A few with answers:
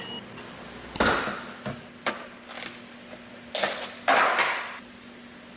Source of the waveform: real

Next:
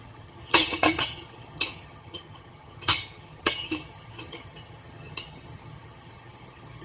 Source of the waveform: fake